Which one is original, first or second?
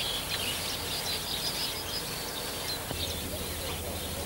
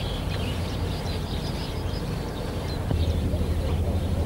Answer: first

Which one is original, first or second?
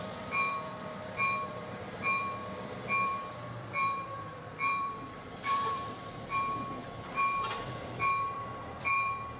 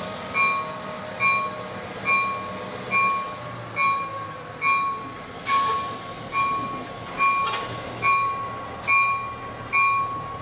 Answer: second